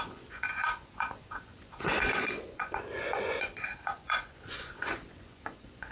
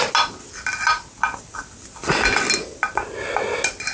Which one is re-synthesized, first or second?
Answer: first